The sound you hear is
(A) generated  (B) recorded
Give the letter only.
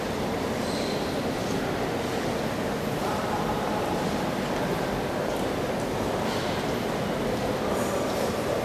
B